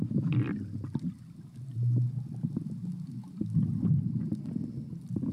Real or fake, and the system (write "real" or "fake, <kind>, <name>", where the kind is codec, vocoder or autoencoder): real